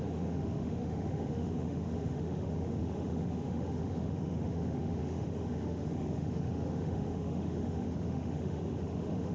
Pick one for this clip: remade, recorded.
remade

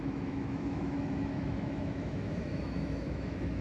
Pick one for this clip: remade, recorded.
remade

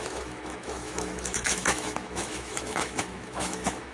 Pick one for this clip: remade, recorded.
remade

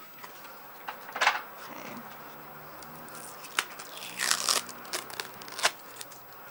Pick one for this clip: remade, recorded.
recorded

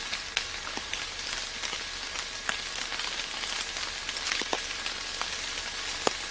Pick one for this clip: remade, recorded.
recorded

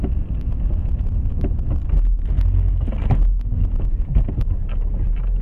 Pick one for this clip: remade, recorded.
recorded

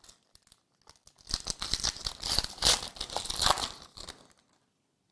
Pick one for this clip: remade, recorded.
recorded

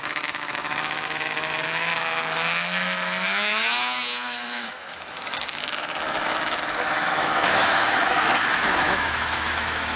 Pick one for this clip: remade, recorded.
remade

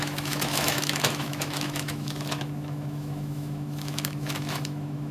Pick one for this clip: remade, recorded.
remade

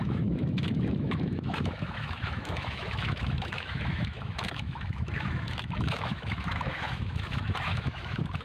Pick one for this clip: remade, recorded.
remade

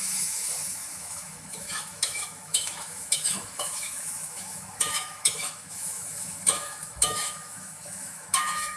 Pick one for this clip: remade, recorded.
remade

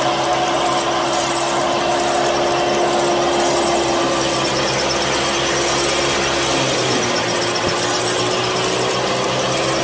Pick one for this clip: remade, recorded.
recorded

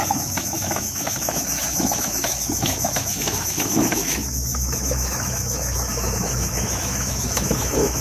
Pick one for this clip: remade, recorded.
remade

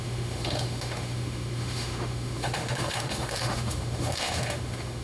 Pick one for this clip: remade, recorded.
remade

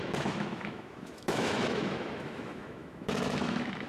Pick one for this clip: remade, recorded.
remade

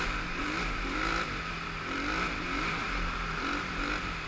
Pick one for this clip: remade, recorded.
recorded